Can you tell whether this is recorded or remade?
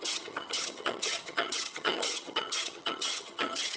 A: remade